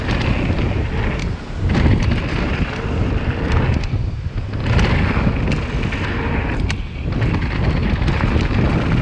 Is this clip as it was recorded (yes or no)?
yes